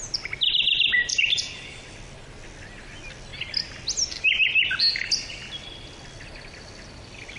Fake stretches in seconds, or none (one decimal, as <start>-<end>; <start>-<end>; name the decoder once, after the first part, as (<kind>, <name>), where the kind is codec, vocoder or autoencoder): none